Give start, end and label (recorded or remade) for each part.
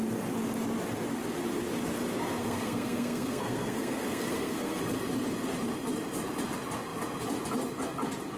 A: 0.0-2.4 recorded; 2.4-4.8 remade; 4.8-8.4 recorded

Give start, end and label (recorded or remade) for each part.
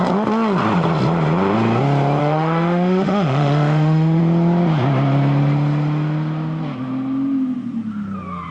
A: 0.0-2.2 recorded; 2.2-4.2 remade; 4.2-8.5 recorded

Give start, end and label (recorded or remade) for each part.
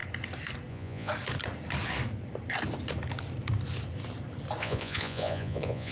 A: 0.0-0.7 recorded; 0.7-1.1 remade; 1.1-4.6 recorded; 4.6-5.9 remade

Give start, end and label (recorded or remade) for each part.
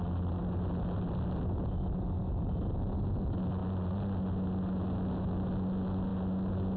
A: 0.0-6.8 recorded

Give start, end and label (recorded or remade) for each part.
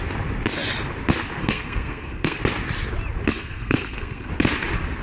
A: 0.0-1.4 recorded; 1.4-2.4 remade; 2.4-3.3 recorded; 3.3-4.3 remade; 4.3-5.0 recorded